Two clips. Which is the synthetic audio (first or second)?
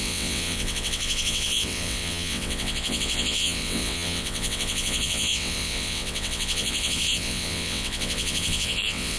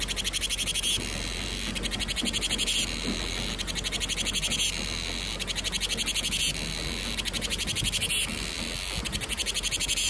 first